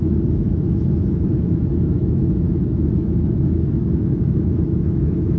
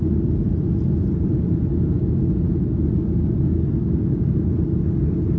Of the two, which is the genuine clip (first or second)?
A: second